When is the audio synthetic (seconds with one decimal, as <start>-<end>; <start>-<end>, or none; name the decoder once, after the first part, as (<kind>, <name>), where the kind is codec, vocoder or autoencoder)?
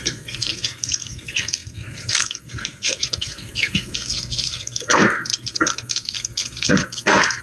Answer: 0.0-7.4 (codec, SNAC)